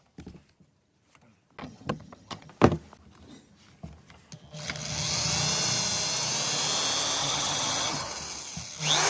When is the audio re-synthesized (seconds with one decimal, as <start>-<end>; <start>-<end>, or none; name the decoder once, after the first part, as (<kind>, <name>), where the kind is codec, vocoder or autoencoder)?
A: 1.6-2.5 (vocoder, HiFi-GAN); 7.2-8.1